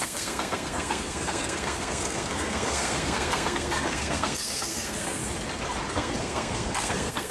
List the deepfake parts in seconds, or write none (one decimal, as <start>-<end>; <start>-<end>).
0.0-5.2; 5.9-7.3